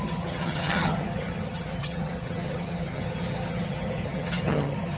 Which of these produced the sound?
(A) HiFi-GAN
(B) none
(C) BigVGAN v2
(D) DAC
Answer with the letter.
A